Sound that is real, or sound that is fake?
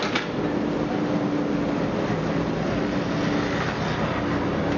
real